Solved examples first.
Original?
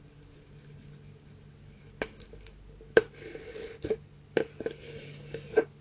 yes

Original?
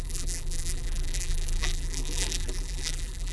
no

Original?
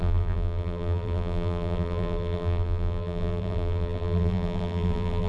no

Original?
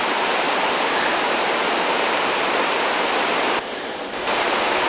no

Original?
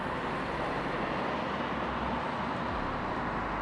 yes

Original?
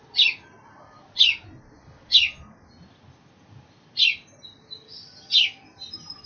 no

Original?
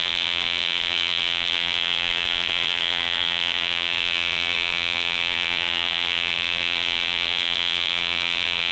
no